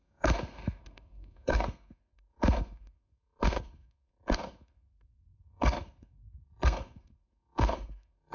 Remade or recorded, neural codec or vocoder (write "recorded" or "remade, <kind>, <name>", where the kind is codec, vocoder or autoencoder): remade, codec, SNAC